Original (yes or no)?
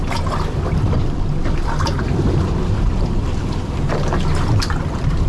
no